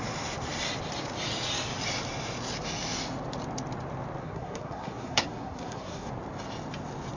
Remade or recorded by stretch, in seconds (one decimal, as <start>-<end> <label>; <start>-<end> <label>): 0.0-4.2 recorded; 4.2-6.1 remade; 6.1-7.2 recorded